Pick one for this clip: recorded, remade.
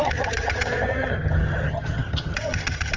remade